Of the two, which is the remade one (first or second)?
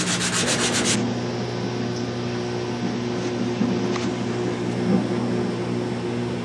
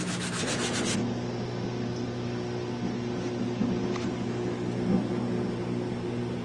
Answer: second